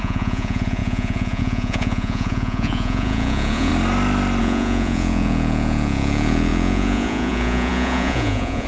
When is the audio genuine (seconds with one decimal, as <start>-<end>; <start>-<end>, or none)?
3.7-4.4